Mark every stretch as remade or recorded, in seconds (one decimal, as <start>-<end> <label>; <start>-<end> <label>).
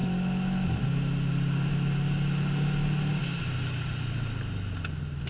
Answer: 0.0-5.3 recorded